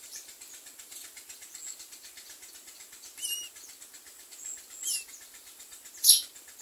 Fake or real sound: real